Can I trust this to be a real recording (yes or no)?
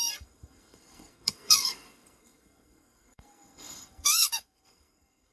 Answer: no